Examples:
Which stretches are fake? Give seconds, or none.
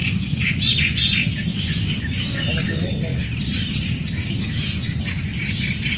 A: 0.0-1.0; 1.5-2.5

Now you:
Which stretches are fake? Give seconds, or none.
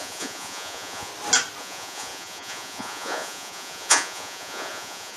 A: 0.0-1.1; 1.6-5.2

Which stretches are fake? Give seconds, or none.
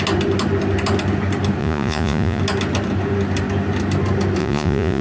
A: 1.6-2.4; 4.4-5.0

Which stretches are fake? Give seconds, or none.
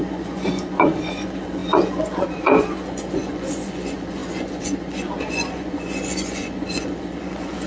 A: 0.0-7.7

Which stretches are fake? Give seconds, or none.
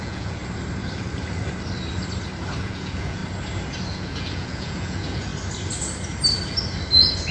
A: 0.0-0.4; 2.6-3.2; 3.9-5.3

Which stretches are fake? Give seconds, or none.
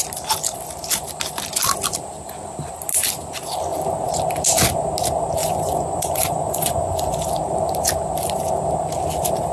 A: 5.4-7.2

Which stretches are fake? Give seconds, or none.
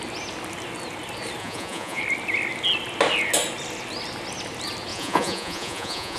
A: 1.4-2.0; 4.9-6.2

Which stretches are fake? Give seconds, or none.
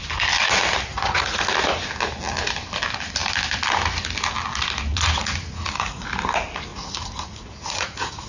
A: 0.9-1.4; 4.9-6.1; 6.7-8.3